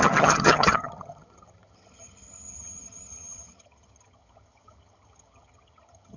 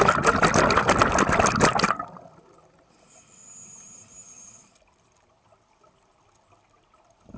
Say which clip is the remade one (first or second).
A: first